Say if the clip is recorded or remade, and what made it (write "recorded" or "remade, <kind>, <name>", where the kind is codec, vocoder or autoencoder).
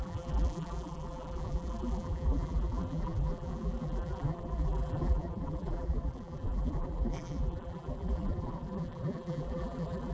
remade, vocoder, BigVGAN v2